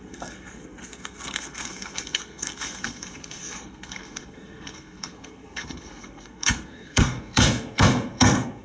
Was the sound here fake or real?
fake